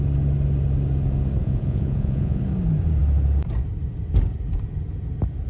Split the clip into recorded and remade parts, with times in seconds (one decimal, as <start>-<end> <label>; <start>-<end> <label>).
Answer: 0.0-1.4 recorded; 1.4-2.4 remade; 2.4-5.5 recorded

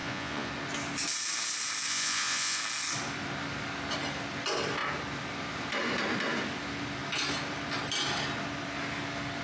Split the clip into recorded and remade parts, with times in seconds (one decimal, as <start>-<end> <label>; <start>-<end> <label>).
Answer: 0.0-0.5 remade; 0.5-1.9 recorded; 1.9-2.6 remade; 2.6-9.4 recorded

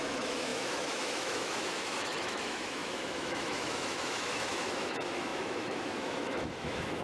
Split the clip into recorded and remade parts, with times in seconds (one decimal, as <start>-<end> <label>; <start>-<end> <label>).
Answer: 0.0-7.0 remade

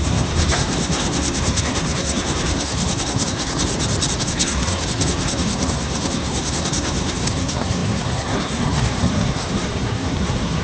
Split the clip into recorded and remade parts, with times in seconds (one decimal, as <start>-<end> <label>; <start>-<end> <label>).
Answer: 0.0-3.7 remade; 3.7-4.2 recorded; 4.2-10.6 remade

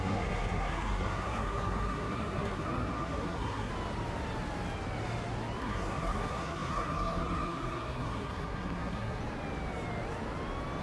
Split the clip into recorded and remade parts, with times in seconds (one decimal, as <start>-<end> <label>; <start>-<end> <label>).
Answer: 0.0-3.7 remade; 3.7-5.6 recorded; 5.6-9.2 remade; 9.2-10.8 recorded

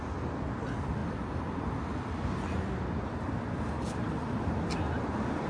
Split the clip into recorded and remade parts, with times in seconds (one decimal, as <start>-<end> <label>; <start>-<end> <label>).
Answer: 0.0-5.5 recorded

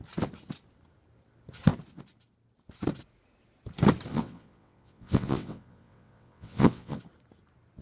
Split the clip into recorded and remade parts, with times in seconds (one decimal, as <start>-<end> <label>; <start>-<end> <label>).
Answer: 0.0-4.1 recorded; 4.1-7.0 remade; 7.0-7.8 recorded